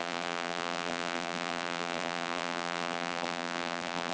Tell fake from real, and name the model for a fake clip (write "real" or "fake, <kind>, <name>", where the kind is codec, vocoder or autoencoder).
fake, vocoder, BigVGAN v2